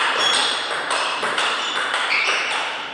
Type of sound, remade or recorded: remade